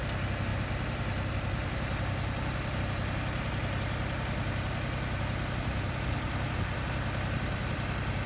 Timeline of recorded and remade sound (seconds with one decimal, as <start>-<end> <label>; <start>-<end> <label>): 0.0-0.5 recorded; 0.5-2.8 remade; 2.8-8.3 recorded